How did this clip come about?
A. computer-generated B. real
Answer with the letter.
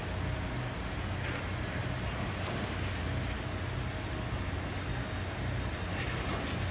B